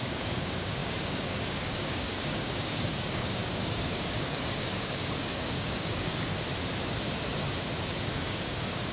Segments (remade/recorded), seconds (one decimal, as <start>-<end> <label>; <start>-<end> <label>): 0.0-6.3 remade; 6.3-8.0 recorded; 8.0-8.9 remade